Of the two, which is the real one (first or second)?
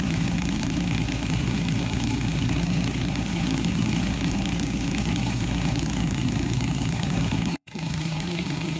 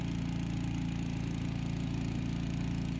second